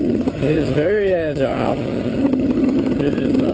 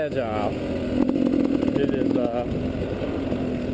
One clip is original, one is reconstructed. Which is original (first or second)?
second